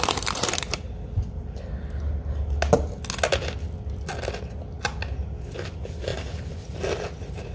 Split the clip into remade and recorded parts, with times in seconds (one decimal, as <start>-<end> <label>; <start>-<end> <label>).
0.0-7.5 recorded